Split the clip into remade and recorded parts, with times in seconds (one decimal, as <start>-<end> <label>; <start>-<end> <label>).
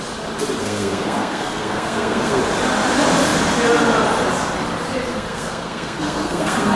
0.0-0.6 recorded; 0.6-2.4 remade; 2.4-5.1 recorded; 5.1-6.8 remade